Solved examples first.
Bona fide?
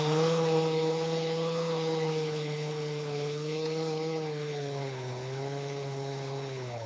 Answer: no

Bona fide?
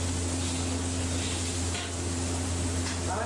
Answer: yes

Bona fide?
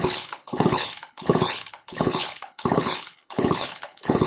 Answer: no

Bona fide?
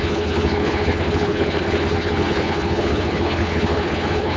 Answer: no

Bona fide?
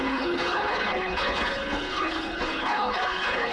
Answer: no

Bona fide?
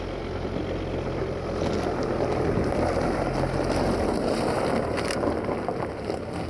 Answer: yes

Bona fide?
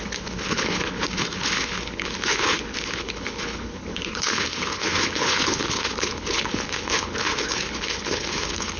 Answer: no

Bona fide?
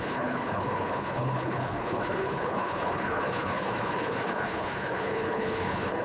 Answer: no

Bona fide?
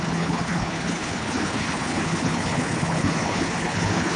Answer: no